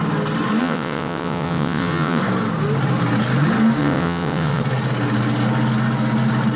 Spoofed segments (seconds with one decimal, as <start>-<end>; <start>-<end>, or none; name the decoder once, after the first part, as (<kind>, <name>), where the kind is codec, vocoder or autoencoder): 0.6-2.2 (vocoder, WaveNeXt); 3.8-4.6